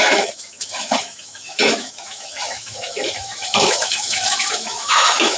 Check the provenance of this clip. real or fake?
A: fake